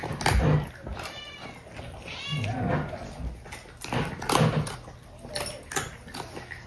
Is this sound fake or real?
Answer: real